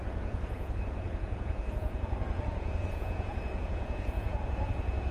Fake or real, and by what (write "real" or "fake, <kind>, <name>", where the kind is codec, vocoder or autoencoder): fake, vocoder, Vocos